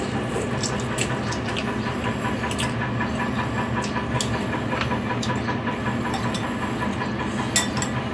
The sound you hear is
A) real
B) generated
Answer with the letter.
A